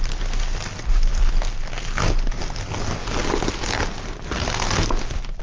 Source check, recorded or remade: recorded